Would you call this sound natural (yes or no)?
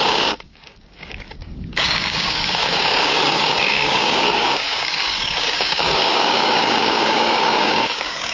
no